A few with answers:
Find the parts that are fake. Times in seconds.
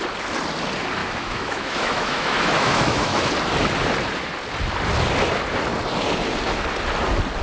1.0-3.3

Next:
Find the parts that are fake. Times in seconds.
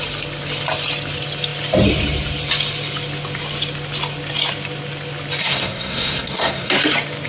5.4-6.7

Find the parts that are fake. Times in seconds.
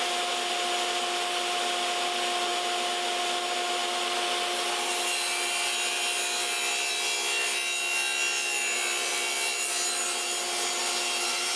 none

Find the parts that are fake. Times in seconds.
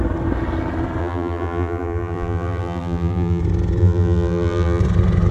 1.0-3.4; 3.8-4.8